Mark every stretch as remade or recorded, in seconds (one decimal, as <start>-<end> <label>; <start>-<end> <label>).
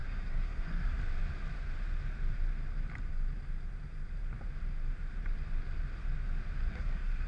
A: 0.0-1.0 remade; 1.0-6.7 recorded; 6.7-7.3 remade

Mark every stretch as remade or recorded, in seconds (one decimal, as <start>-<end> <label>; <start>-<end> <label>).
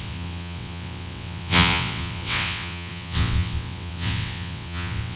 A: 0.0-5.2 remade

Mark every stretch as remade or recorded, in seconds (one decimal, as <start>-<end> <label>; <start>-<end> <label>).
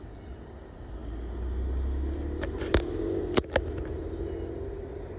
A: 0.0-5.2 recorded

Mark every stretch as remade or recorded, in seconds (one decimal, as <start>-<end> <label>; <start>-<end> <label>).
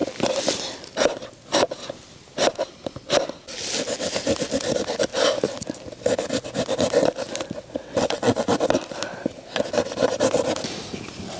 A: 0.0-7.8 recorded; 7.8-8.5 remade; 8.5-11.4 recorded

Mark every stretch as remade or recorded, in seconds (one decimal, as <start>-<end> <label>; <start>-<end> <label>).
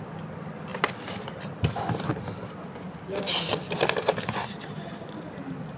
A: 0.0-5.8 recorded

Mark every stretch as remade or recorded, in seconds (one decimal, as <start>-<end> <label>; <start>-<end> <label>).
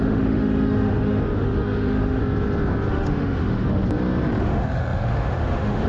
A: 0.0-2.2 remade; 2.2-2.9 recorded; 2.9-3.8 remade; 3.8-4.4 recorded; 4.4-5.9 remade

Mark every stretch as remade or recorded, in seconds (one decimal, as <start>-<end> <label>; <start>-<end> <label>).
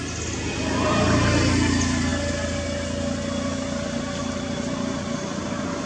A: 0.0-5.9 recorded